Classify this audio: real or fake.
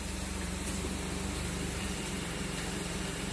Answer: fake